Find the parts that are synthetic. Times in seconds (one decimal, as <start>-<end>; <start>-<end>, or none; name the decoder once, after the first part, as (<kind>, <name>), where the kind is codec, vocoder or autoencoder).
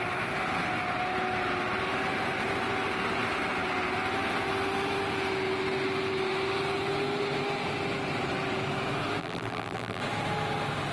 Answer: 9.2-10.0 (vocoder, BigVGAN v2)